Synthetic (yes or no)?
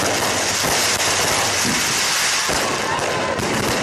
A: no